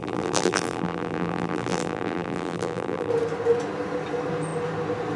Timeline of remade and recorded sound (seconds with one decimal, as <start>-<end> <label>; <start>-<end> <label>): 0.0-3.1 remade; 3.1-5.2 recorded